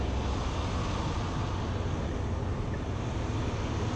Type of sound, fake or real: real